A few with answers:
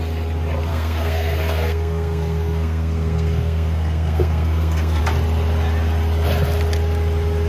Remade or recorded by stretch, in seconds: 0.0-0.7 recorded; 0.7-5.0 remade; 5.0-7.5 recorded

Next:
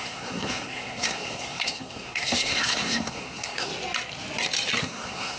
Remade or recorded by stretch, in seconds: 0.0-3.7 remade; 3.7-4.8 recorded; 4.8-5.4 remade

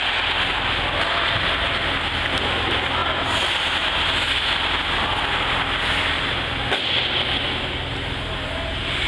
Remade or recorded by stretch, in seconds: 0.0-9.1 recorded